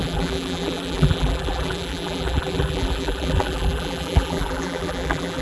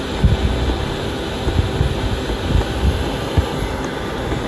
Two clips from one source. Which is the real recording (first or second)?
second